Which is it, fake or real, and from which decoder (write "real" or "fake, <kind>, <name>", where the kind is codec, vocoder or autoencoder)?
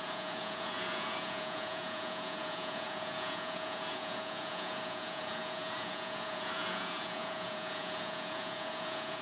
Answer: fake, vocoder, Vocos